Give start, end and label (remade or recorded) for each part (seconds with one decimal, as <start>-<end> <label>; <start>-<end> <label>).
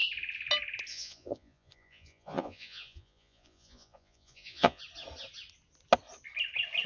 0.0-0.9 recorded; 0.9-4.8 remade; 4.8-6.9 recorded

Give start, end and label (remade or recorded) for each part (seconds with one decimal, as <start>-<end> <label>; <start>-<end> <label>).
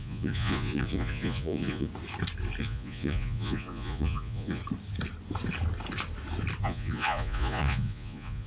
0.0-1.9 remade; 1.9-2.6 recorded; 2.6-4.6 remade; 4.6-6.6 recorded; 6.6-8.5 remade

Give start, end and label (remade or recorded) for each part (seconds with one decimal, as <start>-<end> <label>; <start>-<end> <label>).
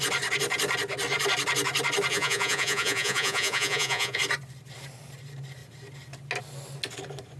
0.0-2.1 recorded; 2.1-4.2 remade; 4.2-7.4 recorded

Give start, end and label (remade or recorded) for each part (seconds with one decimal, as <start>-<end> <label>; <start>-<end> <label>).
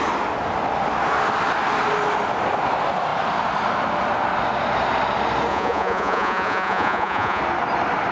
0.0-5.5 recorded; 5.5-7.4 remade; 7.4-8.1 recorded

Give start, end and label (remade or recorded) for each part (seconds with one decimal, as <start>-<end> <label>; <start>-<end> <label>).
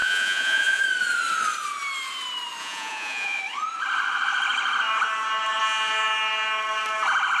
0.0-0.8 remade; 0.8-2.6 recorded; 2.6-3.4 remade; 3.4-7.4 recorded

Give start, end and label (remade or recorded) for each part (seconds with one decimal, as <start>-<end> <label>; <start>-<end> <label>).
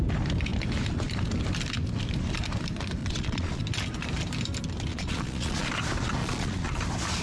0.0-3.0 recorded; 3.0-3.6 remade; 3.6-4.9 recorded; 4.9-5.7 remade; 5.7-6.2 recorded; 6.2-6.8 remade; 6.8-7.2 recorded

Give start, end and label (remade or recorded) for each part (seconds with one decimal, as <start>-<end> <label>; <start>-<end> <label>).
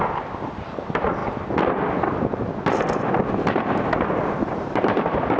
0.0-5.4 recorded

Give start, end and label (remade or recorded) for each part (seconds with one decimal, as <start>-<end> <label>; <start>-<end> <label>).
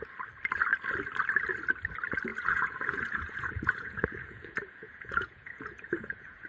0.0-2.3 recorded; 2.3-6.5 remade